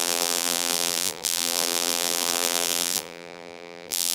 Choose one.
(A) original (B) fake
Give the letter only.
B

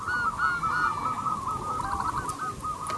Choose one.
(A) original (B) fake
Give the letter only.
A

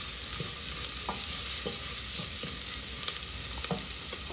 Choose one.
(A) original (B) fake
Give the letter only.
A